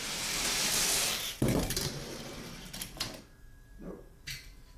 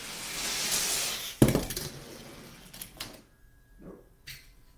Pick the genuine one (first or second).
second